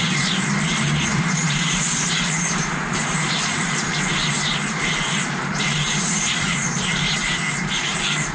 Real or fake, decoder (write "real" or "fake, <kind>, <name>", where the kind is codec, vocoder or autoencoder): fake, vocoder, BigVGAN v2